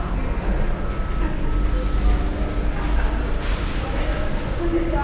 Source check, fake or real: real